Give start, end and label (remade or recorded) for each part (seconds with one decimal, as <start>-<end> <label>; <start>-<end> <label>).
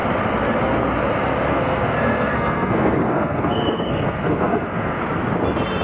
0.0-1.5 recorded; 1.5-5.0 remade; 5.0-5.8 recorded